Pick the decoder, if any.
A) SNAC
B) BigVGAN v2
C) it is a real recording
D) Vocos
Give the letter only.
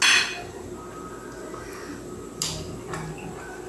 C